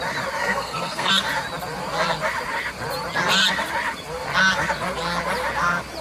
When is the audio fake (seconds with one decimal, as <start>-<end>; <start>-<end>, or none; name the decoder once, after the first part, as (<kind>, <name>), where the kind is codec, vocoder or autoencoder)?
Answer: 0.4-1.1 (codec, SNAC)